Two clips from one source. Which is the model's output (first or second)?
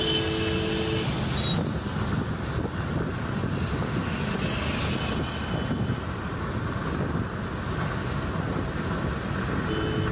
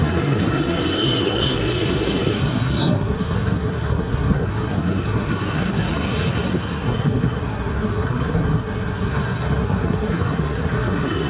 second